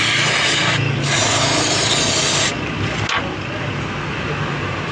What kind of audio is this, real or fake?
real